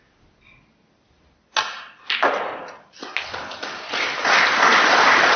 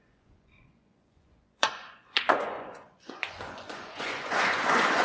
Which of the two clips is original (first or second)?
first